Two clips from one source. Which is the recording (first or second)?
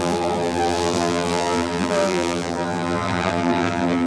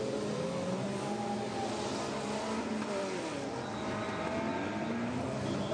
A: second